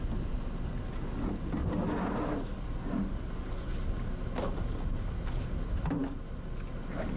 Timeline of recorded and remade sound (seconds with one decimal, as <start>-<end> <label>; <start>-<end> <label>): 0.0-7.2 recorded